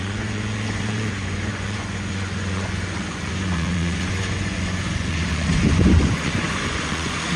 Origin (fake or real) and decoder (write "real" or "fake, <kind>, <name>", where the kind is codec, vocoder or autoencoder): fake, vocoder, Vocos